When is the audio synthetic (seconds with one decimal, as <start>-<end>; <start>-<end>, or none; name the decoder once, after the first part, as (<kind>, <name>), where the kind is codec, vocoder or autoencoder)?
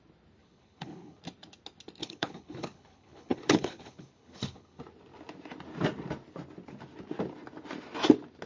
0.4-1.2 (codec, HILCodec); 2.0-4.8